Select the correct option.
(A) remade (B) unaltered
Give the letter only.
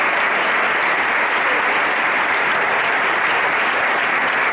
B